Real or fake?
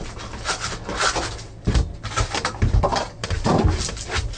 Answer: real